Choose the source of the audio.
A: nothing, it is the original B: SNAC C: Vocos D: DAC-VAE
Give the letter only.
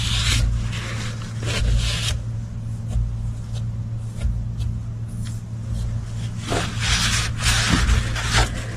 A